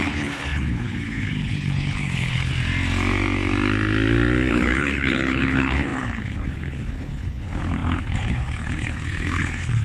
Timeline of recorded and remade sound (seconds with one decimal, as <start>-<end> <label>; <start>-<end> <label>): 0.0-2.5 remade; 2.5-4.5 recorded; 4.5-9.8 remade